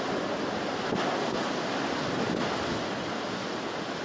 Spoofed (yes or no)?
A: no